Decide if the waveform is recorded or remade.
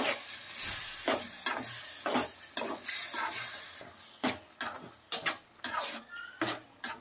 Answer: recorded